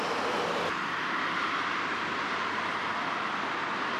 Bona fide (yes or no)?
yes